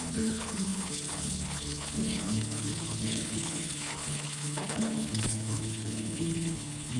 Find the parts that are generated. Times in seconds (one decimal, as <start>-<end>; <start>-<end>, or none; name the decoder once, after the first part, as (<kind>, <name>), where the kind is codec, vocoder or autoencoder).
0.0-7.0 (codec, HILCodec)